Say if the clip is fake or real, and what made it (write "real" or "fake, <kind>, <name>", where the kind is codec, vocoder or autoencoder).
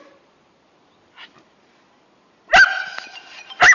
real